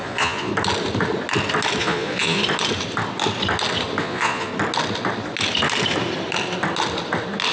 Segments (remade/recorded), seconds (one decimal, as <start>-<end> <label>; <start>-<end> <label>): 0.0-0.5 remade; 0.5-1.8 recorded; 1.8-2.4 remade; 2.4-4.0 recorded; 4.0-4.5 remade; 4.5-7.5 recorded